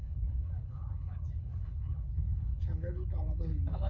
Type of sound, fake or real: fake